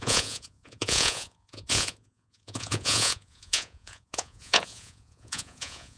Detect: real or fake fake